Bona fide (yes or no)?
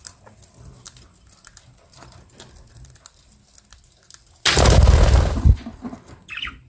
yes